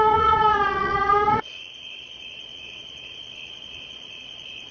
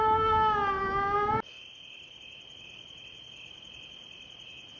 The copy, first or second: first